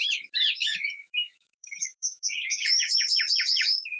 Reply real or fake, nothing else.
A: fake